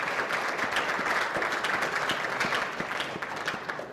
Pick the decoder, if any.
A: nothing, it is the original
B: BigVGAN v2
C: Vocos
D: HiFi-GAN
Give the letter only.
A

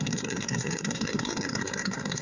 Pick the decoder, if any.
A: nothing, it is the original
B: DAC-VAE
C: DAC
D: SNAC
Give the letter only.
D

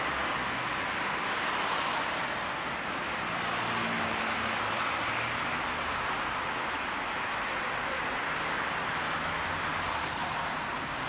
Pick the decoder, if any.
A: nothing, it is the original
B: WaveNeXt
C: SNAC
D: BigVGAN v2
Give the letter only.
A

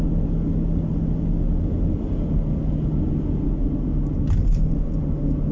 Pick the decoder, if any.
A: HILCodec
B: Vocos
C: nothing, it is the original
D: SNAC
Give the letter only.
C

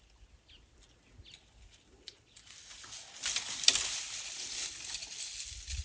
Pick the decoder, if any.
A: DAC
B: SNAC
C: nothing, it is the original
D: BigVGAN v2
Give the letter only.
C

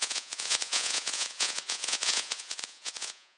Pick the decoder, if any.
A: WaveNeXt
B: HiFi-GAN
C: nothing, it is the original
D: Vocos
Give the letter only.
D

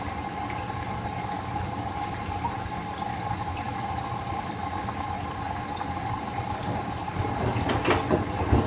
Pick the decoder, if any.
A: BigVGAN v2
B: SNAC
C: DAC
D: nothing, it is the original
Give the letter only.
D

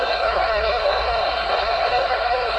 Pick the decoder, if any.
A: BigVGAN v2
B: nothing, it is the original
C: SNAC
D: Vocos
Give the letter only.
C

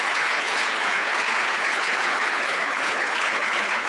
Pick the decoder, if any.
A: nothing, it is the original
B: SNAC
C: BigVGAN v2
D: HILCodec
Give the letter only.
D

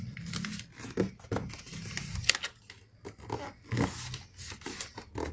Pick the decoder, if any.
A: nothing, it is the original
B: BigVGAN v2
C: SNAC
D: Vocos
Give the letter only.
A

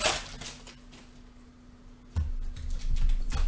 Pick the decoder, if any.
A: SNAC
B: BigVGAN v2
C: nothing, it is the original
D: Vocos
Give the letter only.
C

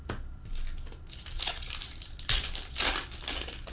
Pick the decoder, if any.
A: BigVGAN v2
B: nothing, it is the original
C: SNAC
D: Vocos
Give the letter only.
B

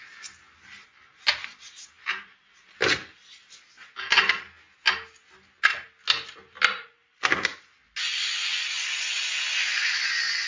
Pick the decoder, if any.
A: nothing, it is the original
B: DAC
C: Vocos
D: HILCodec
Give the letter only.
A